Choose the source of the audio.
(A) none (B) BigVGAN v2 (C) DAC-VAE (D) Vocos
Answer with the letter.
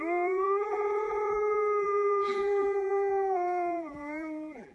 B